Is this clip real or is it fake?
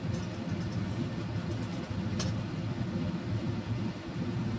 real